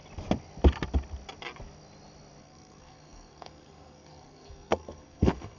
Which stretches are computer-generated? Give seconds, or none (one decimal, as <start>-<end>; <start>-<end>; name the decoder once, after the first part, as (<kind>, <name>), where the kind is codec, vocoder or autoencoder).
2.4-5.6 (codec, SNAC)